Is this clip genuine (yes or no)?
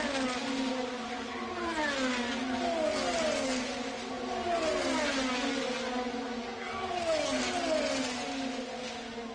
yes